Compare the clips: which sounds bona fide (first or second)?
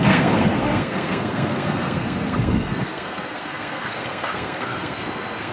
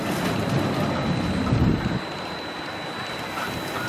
second